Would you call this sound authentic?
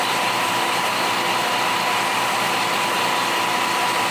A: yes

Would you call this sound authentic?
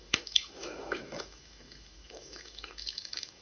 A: no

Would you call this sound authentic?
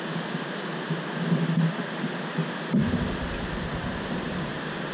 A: yes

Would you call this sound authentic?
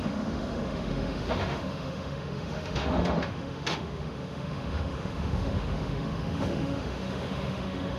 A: no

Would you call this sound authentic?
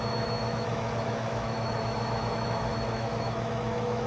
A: no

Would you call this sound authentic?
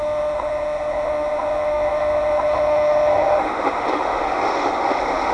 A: no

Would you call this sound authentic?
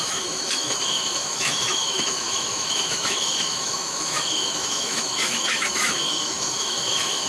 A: no